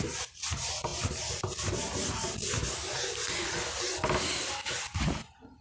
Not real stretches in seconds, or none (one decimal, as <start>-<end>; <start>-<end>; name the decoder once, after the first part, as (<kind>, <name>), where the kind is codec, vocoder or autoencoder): none